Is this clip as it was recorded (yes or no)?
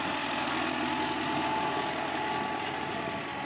yes